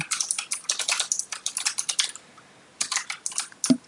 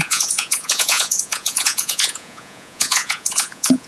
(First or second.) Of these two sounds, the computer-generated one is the second